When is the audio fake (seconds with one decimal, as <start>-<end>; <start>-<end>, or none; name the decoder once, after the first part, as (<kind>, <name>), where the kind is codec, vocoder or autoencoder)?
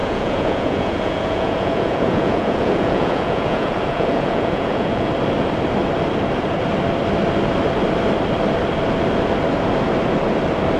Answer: 0.0-5.1 (vocoder, Vocos)